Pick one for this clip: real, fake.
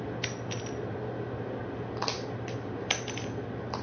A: real